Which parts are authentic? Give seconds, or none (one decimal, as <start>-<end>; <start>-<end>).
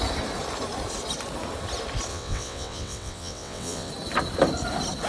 0.0-2.1; 3.9-5.1